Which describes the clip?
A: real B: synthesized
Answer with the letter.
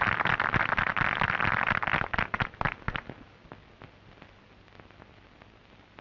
A